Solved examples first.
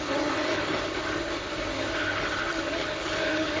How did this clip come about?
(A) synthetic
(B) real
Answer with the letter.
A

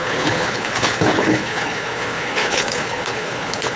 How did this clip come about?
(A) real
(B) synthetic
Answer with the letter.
B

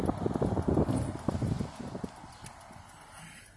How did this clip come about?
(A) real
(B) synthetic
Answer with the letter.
A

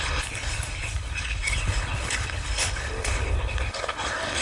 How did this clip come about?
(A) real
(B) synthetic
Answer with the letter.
B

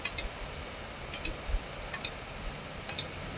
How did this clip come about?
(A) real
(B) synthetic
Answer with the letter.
A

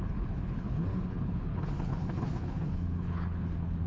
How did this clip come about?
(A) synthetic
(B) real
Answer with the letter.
A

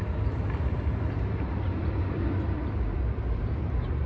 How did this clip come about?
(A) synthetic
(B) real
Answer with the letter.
B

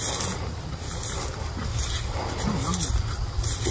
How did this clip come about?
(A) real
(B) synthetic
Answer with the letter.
A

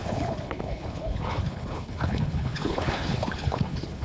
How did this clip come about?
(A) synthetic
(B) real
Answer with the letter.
A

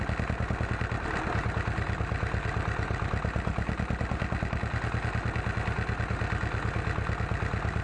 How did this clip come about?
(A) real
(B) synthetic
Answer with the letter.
A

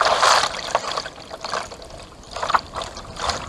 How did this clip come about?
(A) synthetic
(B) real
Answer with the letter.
B